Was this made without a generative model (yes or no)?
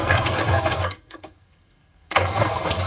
no